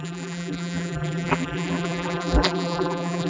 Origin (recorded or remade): remade